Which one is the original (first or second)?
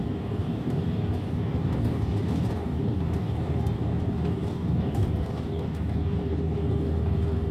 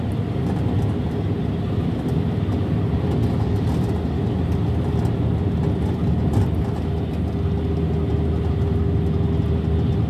second